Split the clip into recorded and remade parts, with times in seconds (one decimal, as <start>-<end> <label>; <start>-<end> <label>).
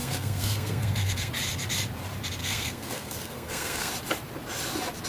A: 0.0-1.3 remade; 1.3-2.4 recorded; 2.4-3.9 remade; 3.9-5.1 recorded